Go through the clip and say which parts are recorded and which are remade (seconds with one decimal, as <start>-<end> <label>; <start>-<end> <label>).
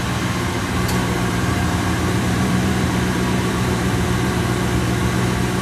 0.0-1.0 recorded; 1.0-4.4 remade; 4.4-5.6 recorded